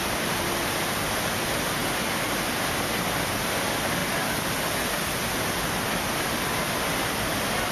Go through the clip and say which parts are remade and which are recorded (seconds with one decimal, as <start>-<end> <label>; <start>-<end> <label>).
0.0-7.7 recorded